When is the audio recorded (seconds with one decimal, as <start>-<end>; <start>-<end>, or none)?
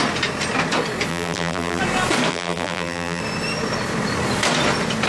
0.0-1.1; 1.8-2.3; 3.2-5.1